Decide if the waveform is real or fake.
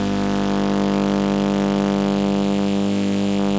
real